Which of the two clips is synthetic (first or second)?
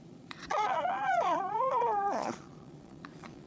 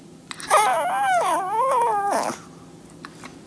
first